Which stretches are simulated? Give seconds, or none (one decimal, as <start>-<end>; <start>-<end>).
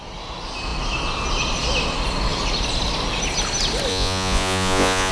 3.9-5.1